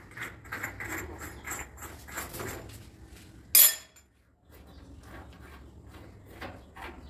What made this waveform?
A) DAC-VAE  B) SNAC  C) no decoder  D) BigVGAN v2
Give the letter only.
C